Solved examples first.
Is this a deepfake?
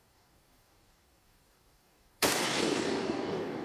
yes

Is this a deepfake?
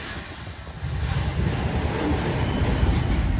no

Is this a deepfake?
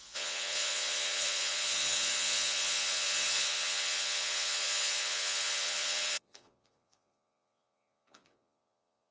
yes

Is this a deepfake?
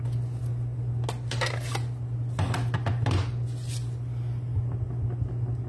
no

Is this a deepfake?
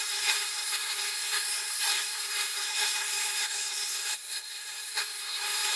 yes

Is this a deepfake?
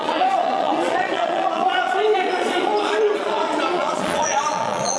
yes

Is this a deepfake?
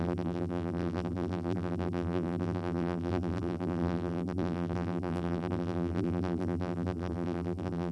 yes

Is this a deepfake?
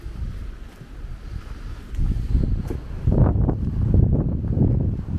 no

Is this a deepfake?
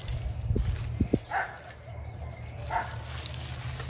no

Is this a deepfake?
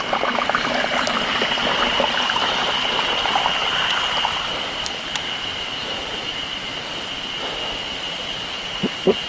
no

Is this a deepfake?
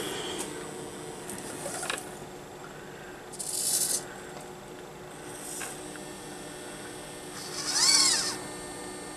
no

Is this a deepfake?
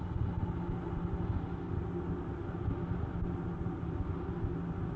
no